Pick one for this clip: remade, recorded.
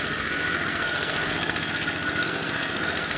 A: remade